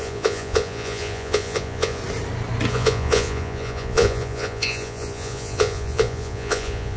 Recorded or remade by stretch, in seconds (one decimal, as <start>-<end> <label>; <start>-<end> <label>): 0.0-2.0 remade; 2.0-2.7 recorded; 2.7-7.0 remade